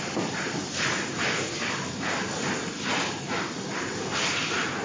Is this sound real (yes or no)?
yes